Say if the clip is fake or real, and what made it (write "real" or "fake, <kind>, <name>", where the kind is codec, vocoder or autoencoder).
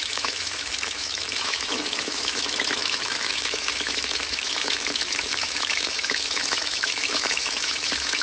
fake, autoencoder, DAC-VAE